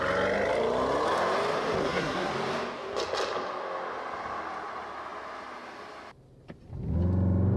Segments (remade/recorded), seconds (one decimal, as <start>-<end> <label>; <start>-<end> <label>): 0.0-1.8 recorded; 1.8-2.3 remade; 2.3-7.6 recorded